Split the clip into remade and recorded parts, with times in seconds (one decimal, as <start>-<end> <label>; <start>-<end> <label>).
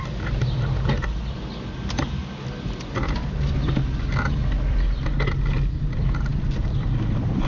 0.0-7.5 recorded